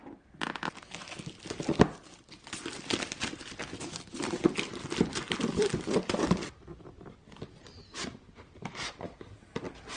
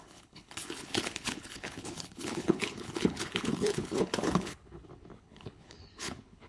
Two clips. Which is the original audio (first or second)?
first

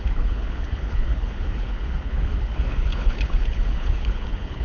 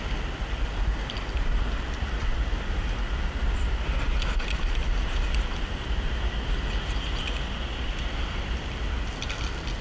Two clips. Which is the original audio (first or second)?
second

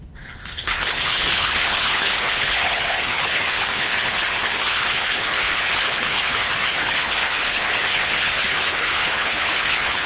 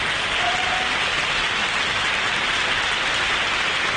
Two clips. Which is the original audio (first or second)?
second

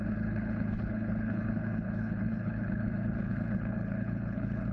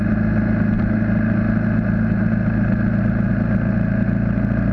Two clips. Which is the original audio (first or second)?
second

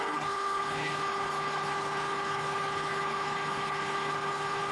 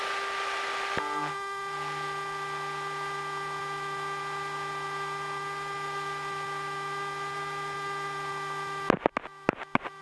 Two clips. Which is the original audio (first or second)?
second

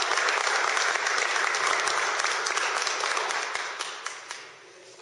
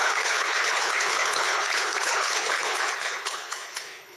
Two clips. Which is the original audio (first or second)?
first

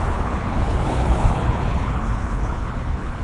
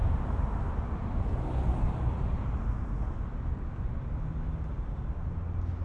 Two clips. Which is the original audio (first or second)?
second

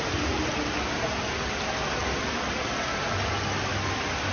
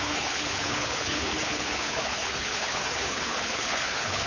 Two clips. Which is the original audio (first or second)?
first